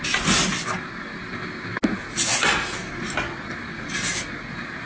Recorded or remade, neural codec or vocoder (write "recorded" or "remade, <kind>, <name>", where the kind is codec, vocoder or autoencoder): recorded